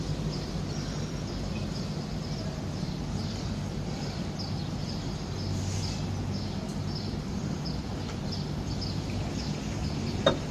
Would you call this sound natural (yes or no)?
yes